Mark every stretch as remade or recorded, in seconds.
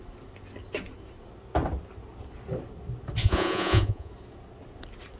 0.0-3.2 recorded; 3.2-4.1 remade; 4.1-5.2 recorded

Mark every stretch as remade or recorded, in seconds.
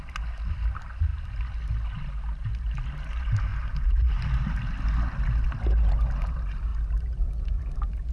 0.0-8.1 recorded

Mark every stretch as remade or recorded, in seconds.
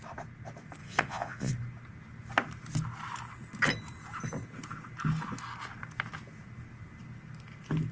0.0-0.8 recorded; 0.8-1.5 remade; 1.5-7.9 recorded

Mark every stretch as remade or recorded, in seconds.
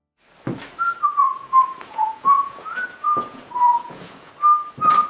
0.0-1.2 recorded; 1.2-4.3 remade; 4.3-5.1 recorded